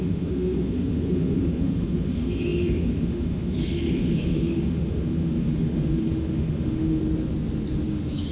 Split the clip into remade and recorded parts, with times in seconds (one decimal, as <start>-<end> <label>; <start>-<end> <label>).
0.0-7.0 remade; 7.0-7.9 recorded; 7.9-8.3 remade